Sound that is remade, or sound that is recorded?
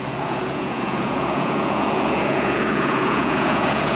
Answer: remade